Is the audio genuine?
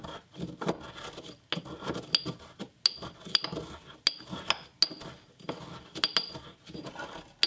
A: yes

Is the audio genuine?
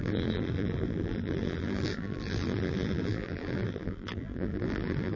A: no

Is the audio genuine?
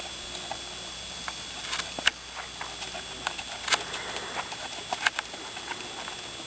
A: yes